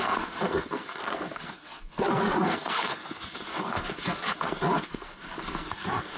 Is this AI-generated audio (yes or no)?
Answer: yes